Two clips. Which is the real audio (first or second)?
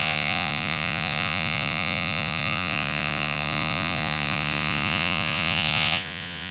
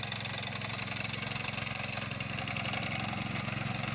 second